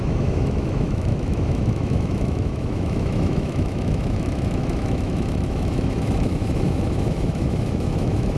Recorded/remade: remade